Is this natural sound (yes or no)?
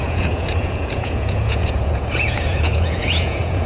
no